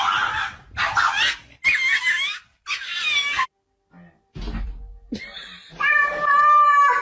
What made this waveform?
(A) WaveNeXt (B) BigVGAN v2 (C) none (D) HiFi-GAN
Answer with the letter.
C